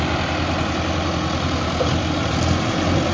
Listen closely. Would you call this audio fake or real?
real